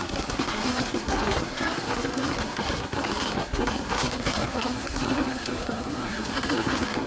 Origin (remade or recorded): remade